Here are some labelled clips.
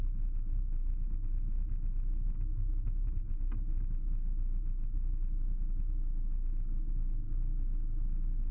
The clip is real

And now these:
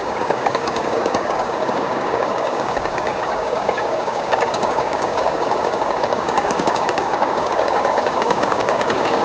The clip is fake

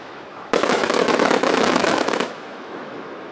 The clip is fake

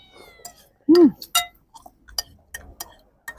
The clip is real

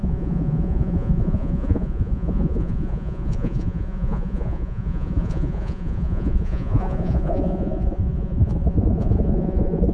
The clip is fake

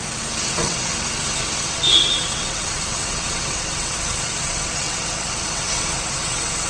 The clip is fake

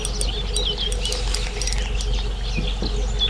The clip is real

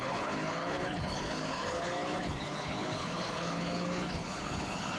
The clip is fake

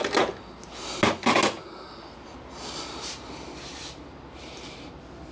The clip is real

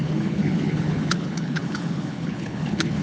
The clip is fake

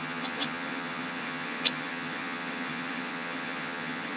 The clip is fake